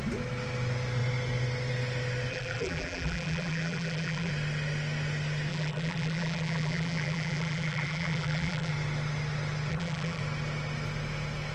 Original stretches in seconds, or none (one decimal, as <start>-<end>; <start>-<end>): 0.0-2.3; 4.3-5.5; 8.7-9.7; 10.2-11.5